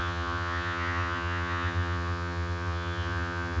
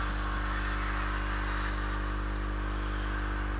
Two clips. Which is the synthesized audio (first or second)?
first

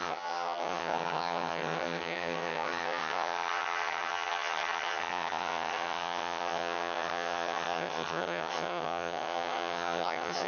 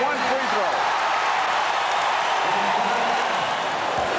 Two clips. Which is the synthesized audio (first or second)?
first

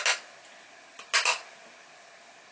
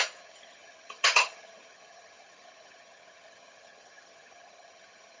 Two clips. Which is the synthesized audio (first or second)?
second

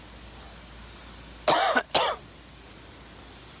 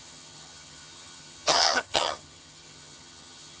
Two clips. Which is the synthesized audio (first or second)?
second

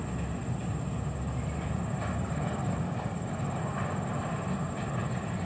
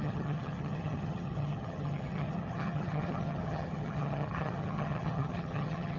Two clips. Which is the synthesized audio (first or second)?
second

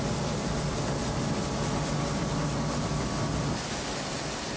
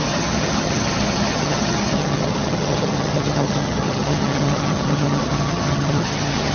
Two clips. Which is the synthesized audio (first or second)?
second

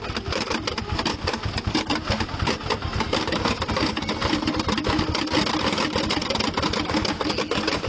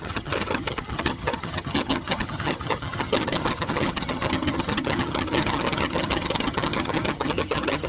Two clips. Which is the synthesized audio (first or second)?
second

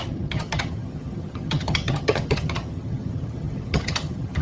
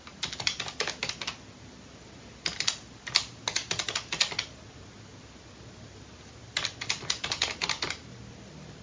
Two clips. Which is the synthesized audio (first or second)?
first